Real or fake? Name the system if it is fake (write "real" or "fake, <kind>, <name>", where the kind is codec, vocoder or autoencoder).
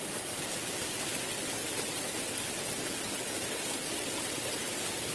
real